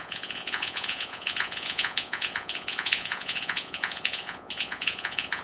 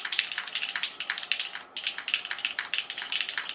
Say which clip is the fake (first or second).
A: first